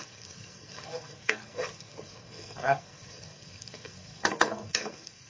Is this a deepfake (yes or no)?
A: yes